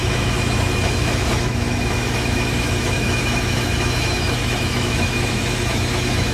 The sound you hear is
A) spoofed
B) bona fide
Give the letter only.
A